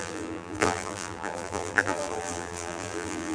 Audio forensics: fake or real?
fake